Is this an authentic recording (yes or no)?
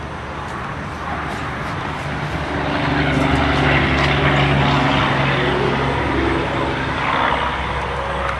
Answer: yes